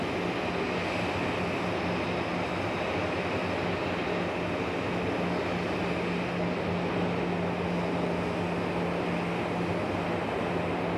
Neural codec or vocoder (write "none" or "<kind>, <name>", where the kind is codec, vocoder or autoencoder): none